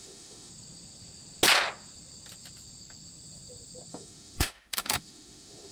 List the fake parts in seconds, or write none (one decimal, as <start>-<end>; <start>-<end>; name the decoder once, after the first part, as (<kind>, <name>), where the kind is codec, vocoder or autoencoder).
0.0-0.5 (autoencoder, DAC-VAE); 3.9-5.7